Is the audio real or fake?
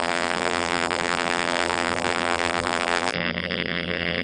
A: fake